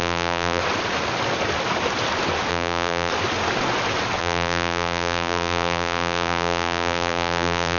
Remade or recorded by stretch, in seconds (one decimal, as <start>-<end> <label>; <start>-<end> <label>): 0.0-0.6 remade; 0.6-2.5 recorded; 2.5-3.1 remade; 3.1-4.2 recorded; 4.2-7.8 remade